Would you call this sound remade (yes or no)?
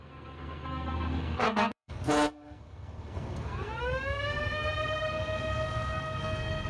yes